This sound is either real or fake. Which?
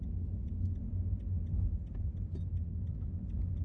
real